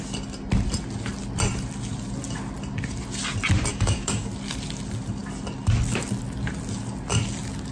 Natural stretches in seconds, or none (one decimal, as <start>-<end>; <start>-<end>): 0.0-3.7; 4.3-7.7